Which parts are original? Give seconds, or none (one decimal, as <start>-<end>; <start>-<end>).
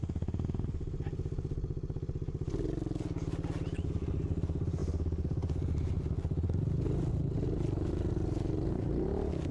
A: 0.0-9.5